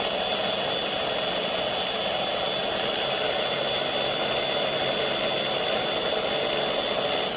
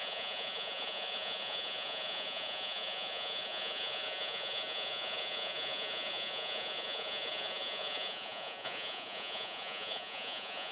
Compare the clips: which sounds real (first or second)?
first